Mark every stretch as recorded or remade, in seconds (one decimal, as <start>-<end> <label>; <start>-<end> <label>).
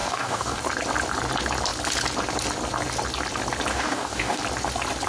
0.0-0.6 remade; 0.6-3.7 recorded; 3.7-4.4 remade; 4.4-5.1 recorded